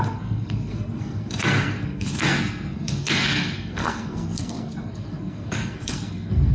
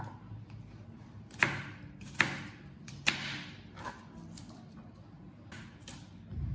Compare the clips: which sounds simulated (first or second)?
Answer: first